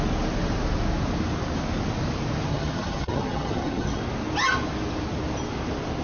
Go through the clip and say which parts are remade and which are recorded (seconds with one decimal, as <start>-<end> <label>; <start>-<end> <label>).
0.0-2.5 recorded; 2.5-4.0 remade; 4.0-6.0 recorded